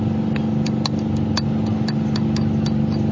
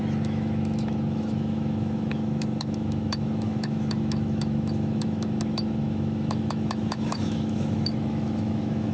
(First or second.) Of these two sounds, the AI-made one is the second